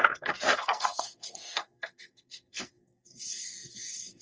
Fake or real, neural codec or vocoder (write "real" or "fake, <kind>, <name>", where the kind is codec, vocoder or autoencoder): fake, codec, SNAC